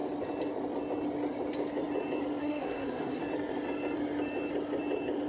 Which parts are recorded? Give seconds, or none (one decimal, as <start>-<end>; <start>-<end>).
0.0-2.4; 3.2-5.3